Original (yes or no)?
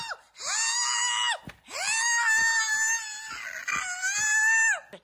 yes